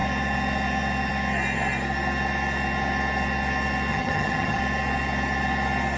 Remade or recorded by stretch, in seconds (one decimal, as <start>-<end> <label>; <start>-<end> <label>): 0.0-3.9 recorded; 3.9-4.6 remade; 4.6-6.0 recorded